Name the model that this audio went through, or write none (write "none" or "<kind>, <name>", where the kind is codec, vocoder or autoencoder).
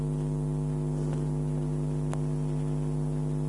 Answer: none